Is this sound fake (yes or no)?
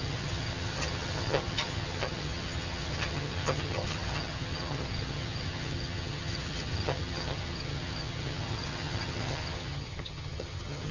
yes